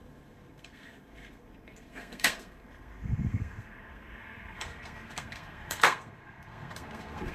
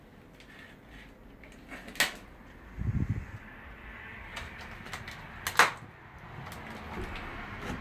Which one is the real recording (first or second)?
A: second